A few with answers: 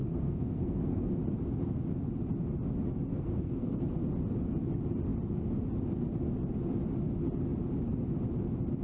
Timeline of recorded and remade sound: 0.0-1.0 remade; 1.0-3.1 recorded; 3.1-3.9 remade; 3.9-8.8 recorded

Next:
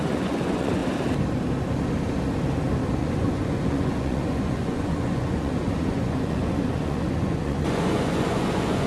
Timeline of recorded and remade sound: 0.0-0.8 remade; 0.8-3.0 recorded; 3.0-8.9 remade

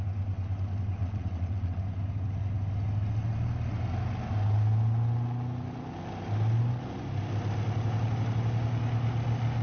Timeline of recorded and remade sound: 0.0-1.0 recorded; 1.0-1.8 remade; 1.8-9.6 recorded

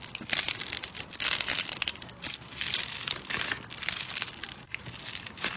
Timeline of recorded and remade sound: 0.0-5.6 recorded

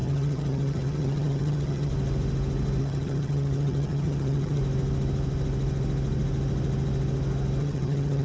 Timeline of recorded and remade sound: 0.0-1.9 remade; 1.9-2.8 recorded; 2.8-4.6 remade; 4.6-7.6 recorded; 7.6-8.2 remade

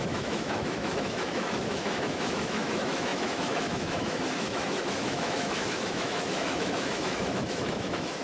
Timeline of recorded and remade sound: 0.0-8.2 remade

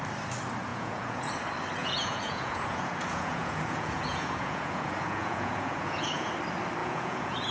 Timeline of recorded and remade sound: 0.0-0.7 recorded; 0.7-1.4 remade; 1.4-1.8 recorded; 1.8-6.3 remade; 6.3-6.8 recorded; 6.8-7.5 remade